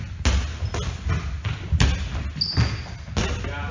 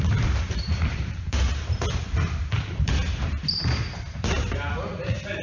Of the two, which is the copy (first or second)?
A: second